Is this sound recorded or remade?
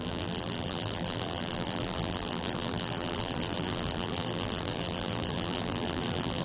remade